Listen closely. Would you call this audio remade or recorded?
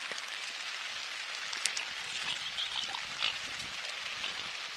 recorded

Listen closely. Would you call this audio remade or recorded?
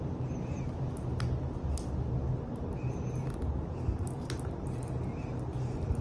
recorded